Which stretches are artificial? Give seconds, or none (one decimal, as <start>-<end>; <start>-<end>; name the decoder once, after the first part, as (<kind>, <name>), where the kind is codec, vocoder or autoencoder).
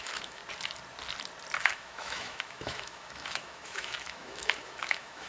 0.0-0.4 (autoencoder, DAC-VAE); 1.6-5.3